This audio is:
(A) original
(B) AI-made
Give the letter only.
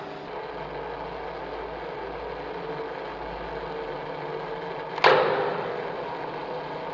A